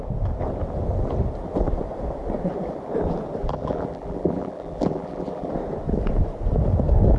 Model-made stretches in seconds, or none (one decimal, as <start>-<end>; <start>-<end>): 3.4-5.5